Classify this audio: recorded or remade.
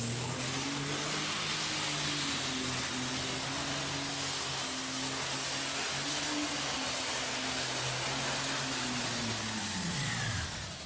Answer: recorded